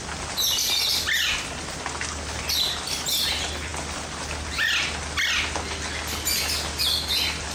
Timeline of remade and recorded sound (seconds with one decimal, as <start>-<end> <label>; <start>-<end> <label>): 0.0-7.5 recorded